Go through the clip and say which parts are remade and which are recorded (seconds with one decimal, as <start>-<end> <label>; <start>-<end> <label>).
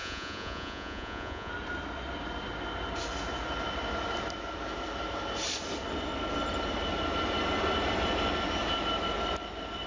0.0-1.5 remade; 1.5-9.9 recorded